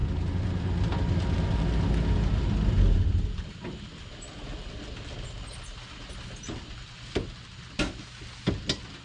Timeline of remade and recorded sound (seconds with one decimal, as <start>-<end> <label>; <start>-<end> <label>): 0.0-9.0 recorded